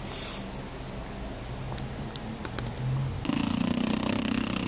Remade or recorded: recorded